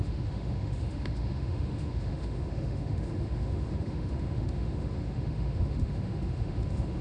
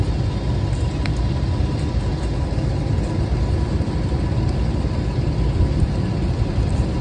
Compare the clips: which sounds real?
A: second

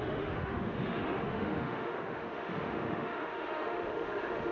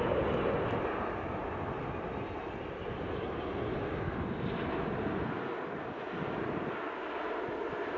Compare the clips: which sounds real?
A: second